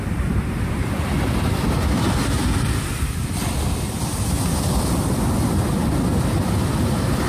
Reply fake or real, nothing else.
real